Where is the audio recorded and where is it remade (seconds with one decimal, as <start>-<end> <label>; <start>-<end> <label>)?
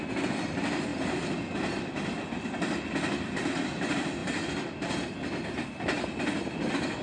0.0-7.0 recorded